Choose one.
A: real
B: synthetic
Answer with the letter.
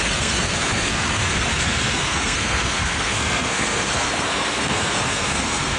B